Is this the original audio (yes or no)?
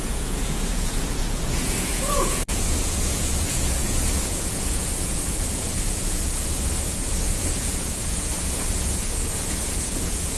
no